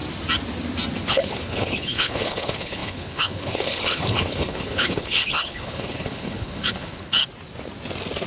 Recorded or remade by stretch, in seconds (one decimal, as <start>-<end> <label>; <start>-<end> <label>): 0.0-1.0 recorded; 1.0-7.2 remade; 7.2-8.3 recorded